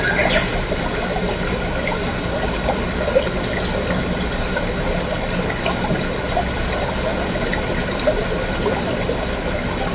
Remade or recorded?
recorded